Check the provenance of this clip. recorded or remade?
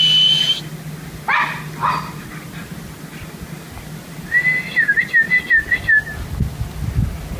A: recorded